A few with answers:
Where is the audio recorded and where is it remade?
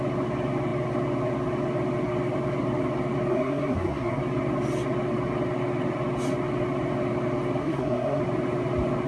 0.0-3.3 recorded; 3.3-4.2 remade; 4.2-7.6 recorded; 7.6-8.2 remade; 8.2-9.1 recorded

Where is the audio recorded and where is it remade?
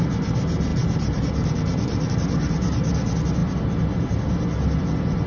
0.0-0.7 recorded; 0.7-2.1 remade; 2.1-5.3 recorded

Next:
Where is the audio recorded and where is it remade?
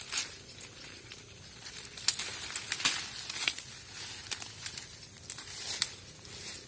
0.0-6.7 recorded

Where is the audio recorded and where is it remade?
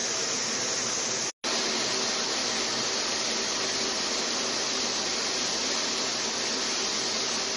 0.0-7.6 recorded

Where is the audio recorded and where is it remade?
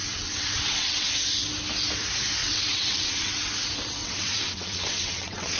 0.0-1.1 remade; 1.1-2.4 recorded; 2.4-3.5 remade; 3.5-4.0 recorded; 4.0-5.6 remade